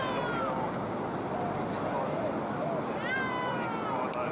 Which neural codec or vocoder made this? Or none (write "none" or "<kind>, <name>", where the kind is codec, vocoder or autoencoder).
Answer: none